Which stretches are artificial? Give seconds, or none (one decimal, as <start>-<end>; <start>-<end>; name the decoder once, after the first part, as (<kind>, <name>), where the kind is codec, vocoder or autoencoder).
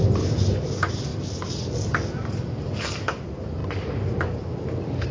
none